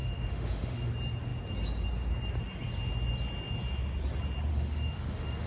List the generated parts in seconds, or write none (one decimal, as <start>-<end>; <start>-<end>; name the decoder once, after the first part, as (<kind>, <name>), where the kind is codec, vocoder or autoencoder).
0.0-0.9 (autoencoder, DAC-VAE); 4.5-5.5